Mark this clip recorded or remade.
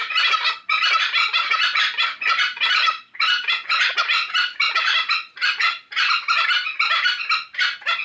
recorded